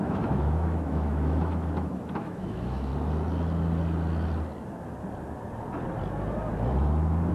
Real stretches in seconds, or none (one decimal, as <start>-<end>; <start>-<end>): 2.9-7.3

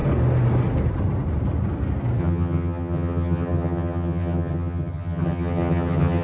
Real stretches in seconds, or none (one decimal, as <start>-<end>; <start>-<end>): 0.0-2.2